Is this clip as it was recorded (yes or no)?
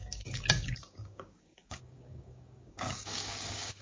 no